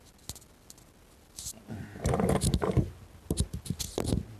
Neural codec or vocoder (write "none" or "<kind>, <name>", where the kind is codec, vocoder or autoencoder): none